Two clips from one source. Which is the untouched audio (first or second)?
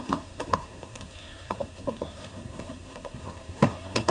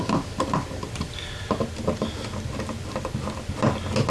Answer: second